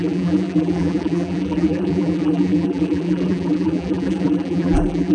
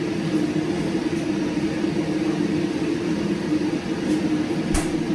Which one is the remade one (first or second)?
first